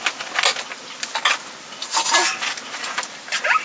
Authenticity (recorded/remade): recorded